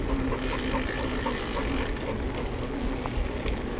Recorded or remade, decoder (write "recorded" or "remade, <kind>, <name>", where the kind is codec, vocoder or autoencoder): recorded